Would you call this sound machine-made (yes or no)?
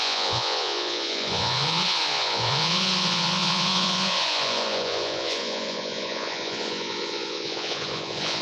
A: yes